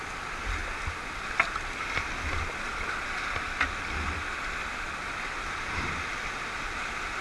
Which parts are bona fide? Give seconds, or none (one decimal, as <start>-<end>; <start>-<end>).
0.0-7.2